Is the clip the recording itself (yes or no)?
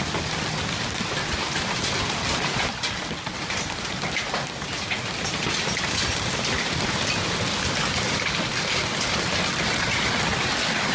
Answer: yes